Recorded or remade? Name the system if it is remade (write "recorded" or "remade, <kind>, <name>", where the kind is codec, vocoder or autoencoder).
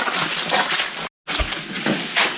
recorded